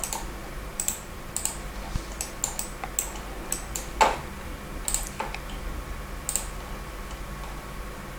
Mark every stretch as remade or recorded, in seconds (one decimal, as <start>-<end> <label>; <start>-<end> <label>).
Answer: 0.0-0.7 recorded; 0.7-1.5 remade; 1.5-8.2 recorded